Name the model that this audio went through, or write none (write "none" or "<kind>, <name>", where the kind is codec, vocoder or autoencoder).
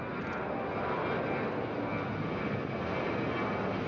none